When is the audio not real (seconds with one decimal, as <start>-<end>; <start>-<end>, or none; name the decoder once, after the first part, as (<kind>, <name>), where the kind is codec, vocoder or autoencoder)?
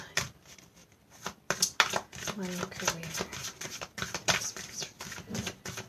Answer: 0.0-0.8 (vocoder, BigVGAN v2); 3.9-5.9